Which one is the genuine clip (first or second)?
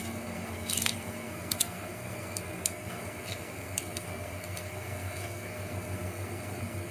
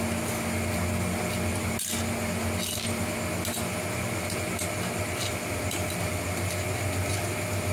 second